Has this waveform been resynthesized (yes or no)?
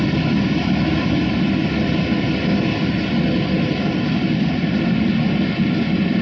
no